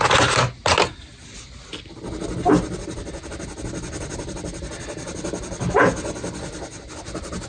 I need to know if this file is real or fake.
real